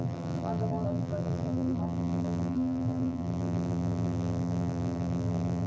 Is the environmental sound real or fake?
fake